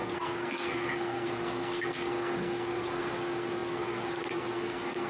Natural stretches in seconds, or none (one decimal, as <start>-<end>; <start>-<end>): none